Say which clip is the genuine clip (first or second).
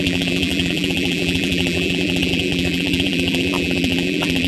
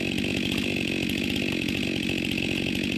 second